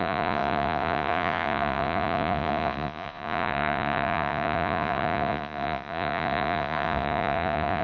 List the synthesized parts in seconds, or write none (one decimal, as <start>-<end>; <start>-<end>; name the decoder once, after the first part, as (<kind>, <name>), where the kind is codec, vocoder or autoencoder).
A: 0.0-7.8 (vocoder, Vocos)